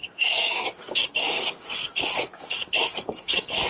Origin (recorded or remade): remade